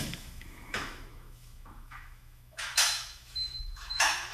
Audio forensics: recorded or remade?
remade